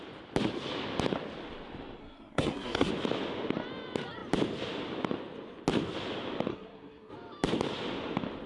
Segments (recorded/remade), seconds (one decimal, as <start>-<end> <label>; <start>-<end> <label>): 0.0-2.0 recorded; 2.0-2.9 remade; 2.9-6.5 recorded; 6.5-7.1 remade; 7.1-8.5 recorded